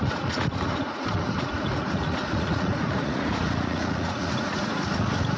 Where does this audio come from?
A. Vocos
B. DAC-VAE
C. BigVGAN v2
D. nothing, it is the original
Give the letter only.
A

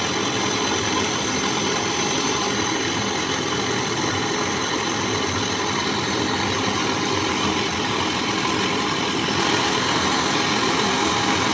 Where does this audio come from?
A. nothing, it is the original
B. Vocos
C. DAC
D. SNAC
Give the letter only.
A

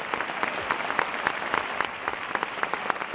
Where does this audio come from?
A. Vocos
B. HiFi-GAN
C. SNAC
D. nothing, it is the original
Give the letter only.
D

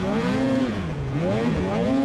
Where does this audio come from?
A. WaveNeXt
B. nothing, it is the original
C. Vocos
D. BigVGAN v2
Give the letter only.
C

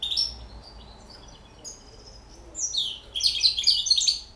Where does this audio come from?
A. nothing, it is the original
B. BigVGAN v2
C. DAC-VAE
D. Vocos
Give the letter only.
A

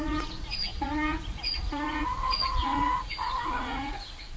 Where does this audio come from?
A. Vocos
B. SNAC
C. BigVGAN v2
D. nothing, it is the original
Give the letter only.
A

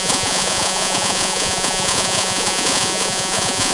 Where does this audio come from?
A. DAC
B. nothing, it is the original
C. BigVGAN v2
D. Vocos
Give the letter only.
D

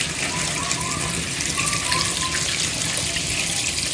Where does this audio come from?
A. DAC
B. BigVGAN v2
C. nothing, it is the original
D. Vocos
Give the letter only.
C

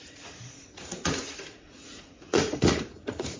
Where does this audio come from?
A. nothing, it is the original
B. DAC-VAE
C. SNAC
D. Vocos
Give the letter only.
D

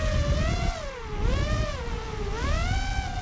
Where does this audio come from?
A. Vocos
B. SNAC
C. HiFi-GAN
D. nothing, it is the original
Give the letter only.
D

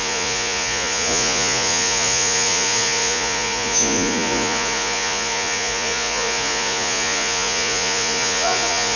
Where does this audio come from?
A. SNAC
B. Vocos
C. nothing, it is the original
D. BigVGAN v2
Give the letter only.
B